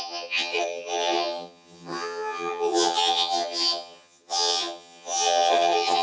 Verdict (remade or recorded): remade